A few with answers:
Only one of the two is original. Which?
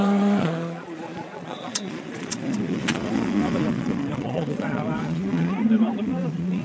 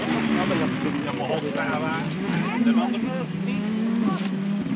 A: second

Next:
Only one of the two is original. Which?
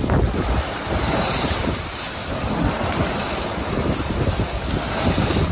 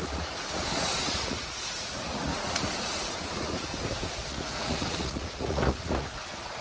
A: first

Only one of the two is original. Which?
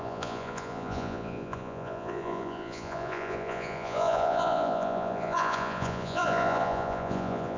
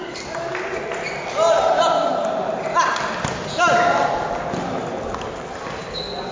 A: second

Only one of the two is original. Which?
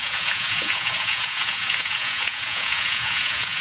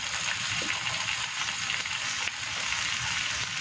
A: second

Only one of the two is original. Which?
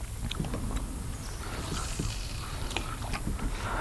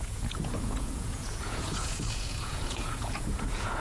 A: first